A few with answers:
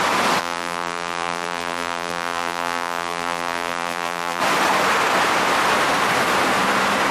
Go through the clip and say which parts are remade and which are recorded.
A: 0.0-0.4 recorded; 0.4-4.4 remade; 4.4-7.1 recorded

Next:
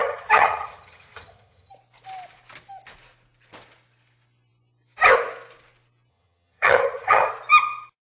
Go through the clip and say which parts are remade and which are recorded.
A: 0.0-1.7 remade; 1.7-6.1 recorded; 6.1-7.3 remade; 7.3-8.2 recorded

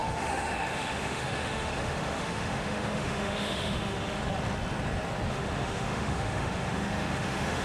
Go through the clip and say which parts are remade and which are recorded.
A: 0.0-4.2 remade; 4.2-5.3 recorded; 5.3-7.6 remade